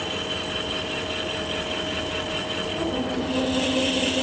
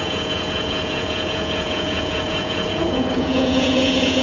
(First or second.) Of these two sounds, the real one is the first